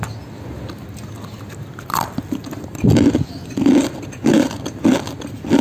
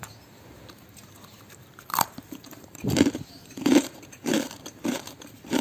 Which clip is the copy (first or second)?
second